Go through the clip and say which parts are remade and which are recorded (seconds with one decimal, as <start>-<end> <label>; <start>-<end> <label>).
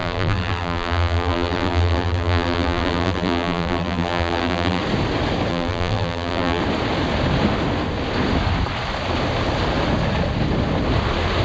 0.0-4.8 remade; 4.8-5.5 recorded; 5.5-6.6 remade; 6.6-11.4 recorded